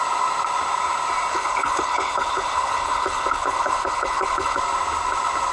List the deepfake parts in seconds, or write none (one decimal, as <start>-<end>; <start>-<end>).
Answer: 1.3-4.6